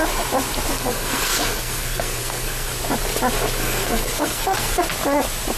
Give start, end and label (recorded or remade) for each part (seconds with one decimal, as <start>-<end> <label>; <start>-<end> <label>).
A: 0.0-0.7 recorded; 0.7-2.7 remade; 2.7-3.6 recorded; 3.6-4.8 remade; 4.8-5.6 recorded